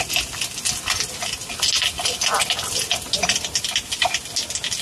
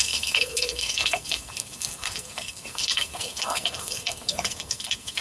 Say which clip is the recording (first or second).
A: first